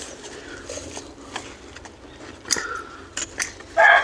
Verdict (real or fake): real